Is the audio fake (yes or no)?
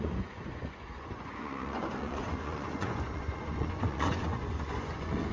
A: yes